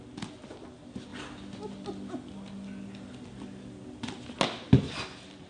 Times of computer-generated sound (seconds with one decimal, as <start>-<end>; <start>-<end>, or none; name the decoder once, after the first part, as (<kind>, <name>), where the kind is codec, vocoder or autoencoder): none

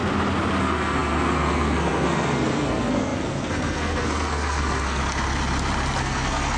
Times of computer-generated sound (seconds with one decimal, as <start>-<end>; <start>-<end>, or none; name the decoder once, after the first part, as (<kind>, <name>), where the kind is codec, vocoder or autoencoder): 0.6-5.0 (codec, SNAC); 6.0-6.6

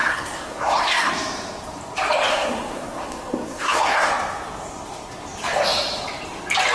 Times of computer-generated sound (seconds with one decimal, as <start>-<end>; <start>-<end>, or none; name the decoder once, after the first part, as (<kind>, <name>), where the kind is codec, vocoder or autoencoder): 0.0-1.1 (codec, SNAC); 2.3-4.1